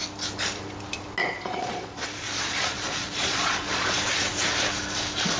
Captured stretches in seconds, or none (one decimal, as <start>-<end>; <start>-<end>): 0.0-1.2; 4.0-5.4